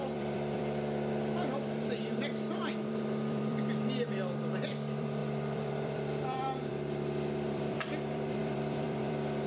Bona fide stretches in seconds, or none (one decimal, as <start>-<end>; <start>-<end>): none